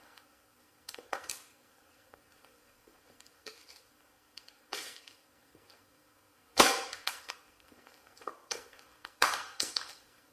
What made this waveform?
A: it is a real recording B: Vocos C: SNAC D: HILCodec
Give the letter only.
C